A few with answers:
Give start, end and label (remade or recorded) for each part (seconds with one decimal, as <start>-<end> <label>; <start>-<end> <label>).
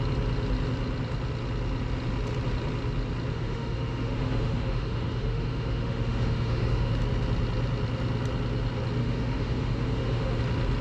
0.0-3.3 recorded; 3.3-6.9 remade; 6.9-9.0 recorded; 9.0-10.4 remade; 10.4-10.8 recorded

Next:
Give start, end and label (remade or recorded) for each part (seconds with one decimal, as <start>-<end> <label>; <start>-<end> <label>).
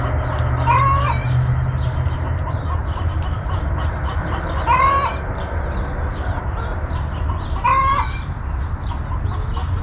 0.0-2.8 recorded; 2.8-3.9 remade; 3.9-9.8 recorded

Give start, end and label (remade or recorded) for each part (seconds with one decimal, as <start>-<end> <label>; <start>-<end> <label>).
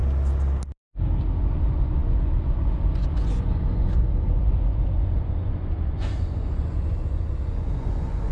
0.0-1.4 recorded; 1.4-8.3 remade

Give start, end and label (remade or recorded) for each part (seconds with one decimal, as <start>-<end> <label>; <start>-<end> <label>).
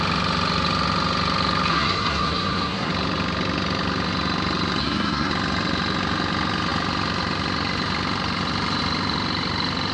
0.0-1.7 recorded; 1.7-2.9 remade; 2.9-4.8 recorded; 4.8-5.3 remade; 5.3-9.9 recorded